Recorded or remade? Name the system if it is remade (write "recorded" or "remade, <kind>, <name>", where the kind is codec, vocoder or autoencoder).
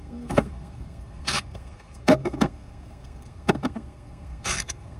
remade, codec, SNAC